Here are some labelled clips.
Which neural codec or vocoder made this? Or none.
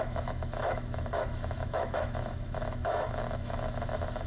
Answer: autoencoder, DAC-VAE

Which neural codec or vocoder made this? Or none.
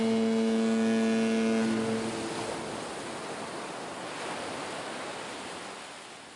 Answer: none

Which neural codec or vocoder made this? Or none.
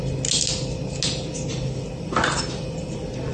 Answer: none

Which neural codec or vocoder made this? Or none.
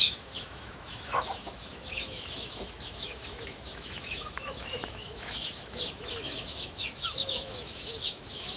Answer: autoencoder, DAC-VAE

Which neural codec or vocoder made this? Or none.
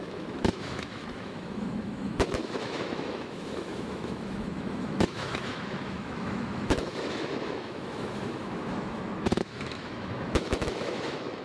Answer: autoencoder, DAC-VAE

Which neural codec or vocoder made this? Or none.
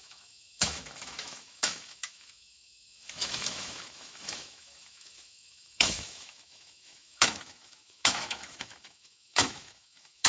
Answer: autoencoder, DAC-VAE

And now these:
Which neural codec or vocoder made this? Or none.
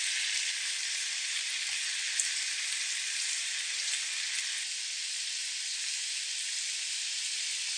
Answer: none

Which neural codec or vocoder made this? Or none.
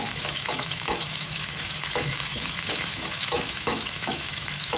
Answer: autoencoder, DAC-VAE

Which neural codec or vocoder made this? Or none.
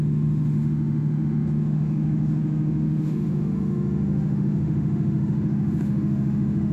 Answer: autoencoder, DAC-VAE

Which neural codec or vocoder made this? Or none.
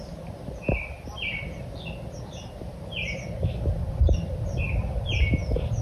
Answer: none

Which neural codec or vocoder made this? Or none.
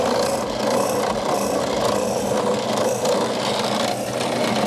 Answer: none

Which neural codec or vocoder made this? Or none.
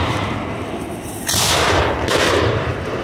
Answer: none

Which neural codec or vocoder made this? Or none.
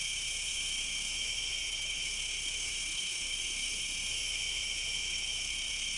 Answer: autoencoder, DAC-VAE